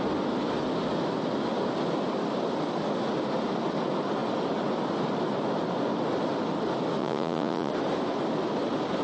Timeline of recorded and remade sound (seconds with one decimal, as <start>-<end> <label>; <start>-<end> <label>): 0.0-7.0 recorded; 7.0-7.7 remade; 7.7-9.0 recorded